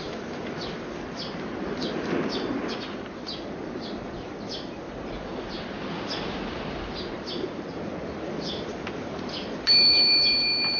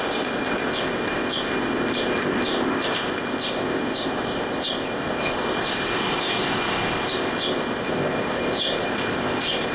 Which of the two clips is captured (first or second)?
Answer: first